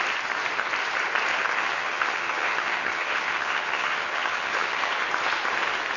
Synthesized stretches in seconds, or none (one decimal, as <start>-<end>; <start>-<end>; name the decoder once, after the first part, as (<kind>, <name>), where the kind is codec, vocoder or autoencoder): 1.3-4.9 (vocoder, HiFi-GAN)